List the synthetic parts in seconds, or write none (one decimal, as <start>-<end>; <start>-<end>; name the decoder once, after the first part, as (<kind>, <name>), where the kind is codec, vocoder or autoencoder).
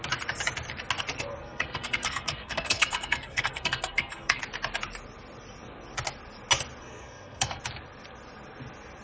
1.4-4.4 (codec, SNAC); 6.8-7.6